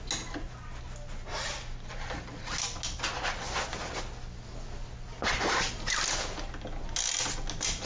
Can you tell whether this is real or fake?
real